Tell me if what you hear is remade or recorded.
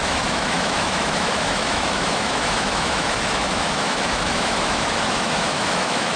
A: remade